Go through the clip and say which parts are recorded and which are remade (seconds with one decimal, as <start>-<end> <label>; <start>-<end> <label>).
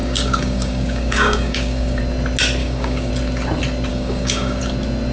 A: 0.0-2.0 remade; 2.0-2.6 recorded; 2.6-3.1 remade; 3.1-3.9 recorded; 3.9-4.6 remade; 4.6-5.1 recorded